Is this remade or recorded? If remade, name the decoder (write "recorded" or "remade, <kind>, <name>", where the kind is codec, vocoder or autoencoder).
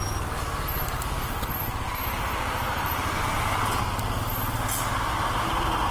recorded